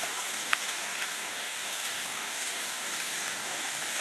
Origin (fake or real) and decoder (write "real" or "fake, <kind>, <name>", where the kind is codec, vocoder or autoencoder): fake, codec, DAC